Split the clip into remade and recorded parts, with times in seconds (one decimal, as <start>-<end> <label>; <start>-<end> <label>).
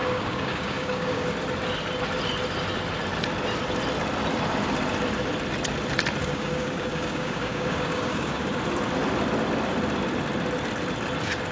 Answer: 0.0-1.3 remade; 1.3-6.2 recorded; 6.2-8.6 remade; 8.6-11.5 recorded